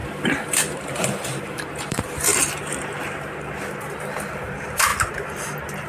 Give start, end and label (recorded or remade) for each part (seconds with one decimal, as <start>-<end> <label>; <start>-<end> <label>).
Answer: 0.0-2.3 remade; 2.3-4.0 recorded; 4.0-4.9 remade; 4.9-5.9 recorded